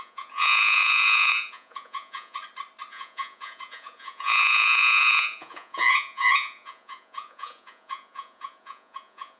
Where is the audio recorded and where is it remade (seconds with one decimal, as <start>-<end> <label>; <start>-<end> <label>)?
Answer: 0.0-2.4 remade; 2.4-2.9 recorded; 2.9-9.4 remade